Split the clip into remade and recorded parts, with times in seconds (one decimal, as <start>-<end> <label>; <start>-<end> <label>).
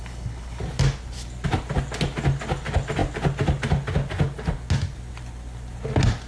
0.0-0.6 remade; 0.6-6.3 recorded